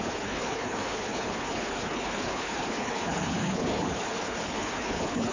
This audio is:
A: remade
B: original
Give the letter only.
A